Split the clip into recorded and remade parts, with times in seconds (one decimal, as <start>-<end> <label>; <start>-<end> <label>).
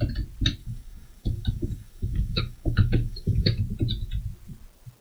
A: 0.0-0.6 recorded; 0.6-3.6 remade; 3.6-5.0 recorded